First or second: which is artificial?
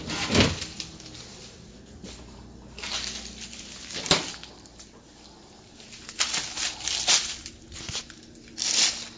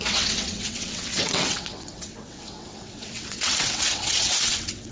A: second